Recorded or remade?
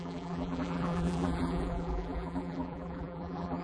remade